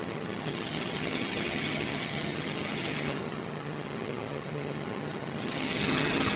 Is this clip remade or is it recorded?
remade